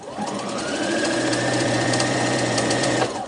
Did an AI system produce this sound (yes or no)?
yes